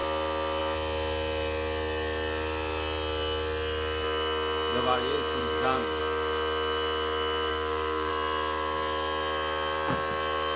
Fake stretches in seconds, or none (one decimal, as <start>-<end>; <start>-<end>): 5.4-6.0; 7.5-8.1